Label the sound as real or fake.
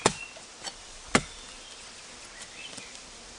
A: real